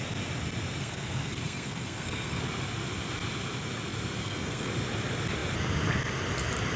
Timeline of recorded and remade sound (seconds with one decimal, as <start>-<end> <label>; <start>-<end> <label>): 0.0-0.8 recorded; 0.8-2.4 remade; 2.4-4.2 recorded; 4.2-4.7 remade; 4.7-6.8 recorded